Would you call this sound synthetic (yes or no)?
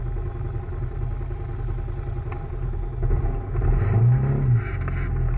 no